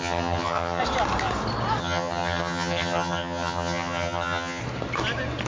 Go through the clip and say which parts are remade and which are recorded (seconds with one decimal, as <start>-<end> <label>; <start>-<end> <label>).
0.0-0.8 remade; 0.8-1.8 recorded; 1.8-4.6 remade; 4.6-5.5 recorded